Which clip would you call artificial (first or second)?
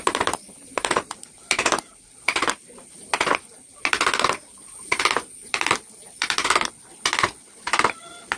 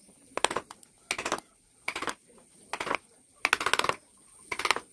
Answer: first